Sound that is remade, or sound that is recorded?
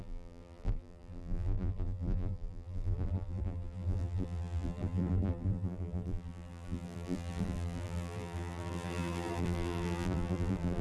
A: remade